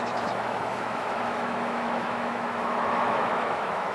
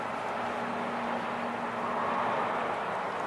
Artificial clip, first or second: first